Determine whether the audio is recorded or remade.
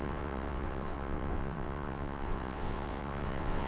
remade